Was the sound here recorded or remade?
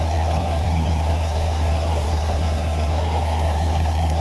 remade